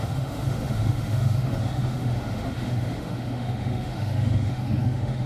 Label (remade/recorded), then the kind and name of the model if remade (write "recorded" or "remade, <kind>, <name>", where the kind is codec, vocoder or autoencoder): remade, autoencoder, DAC-VAE